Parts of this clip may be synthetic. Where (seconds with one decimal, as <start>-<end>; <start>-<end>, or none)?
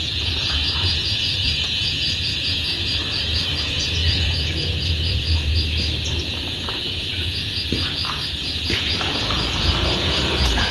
0.0-3.0; 3.6-5.5; 6.2-10.7